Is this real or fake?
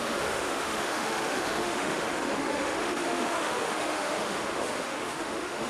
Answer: fake